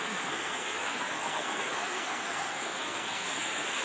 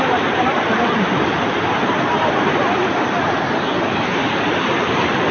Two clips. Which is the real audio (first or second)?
second